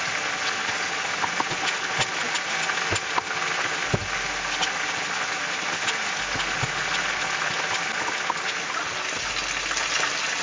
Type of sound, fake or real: real